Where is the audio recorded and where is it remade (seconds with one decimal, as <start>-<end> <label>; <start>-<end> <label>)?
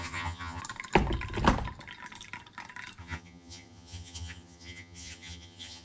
0.0-0.6 remade; 0.6-3.0 recorded; 3.0-5.8 remade